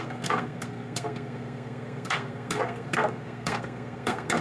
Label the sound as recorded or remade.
remade